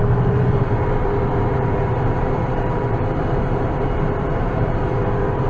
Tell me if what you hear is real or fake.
fake